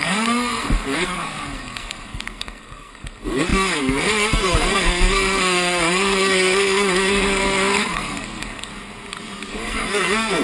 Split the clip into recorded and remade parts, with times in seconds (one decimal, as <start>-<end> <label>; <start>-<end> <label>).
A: 0.0-8.7 remade; 8.7-9.5 recorded; 9.5-10.4 remade

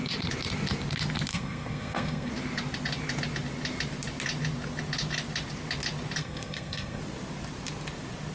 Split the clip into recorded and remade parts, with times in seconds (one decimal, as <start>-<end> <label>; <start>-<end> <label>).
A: 0.0-1.3 recorded; 1.3-2.3 remade; 2.3-6.2 recorded; 6.2-7.0 remade; 7.0-8.3 recorded